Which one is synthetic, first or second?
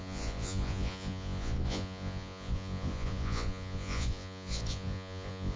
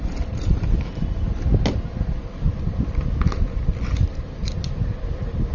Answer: first